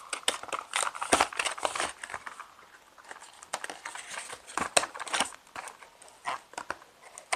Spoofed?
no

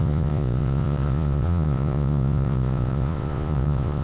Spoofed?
yes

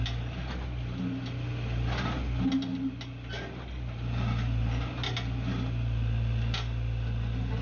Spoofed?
no